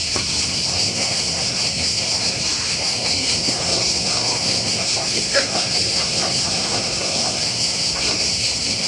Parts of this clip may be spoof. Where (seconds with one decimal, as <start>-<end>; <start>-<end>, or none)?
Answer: 0.0-8.9